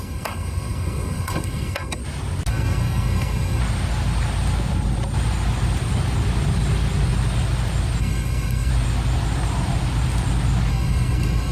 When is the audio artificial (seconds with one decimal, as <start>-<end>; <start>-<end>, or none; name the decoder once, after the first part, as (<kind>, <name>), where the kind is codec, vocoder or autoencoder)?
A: 0.0-2.0 (codec, SNAC); 2.5-3.6; 8.0-8.7; 10.7-11.5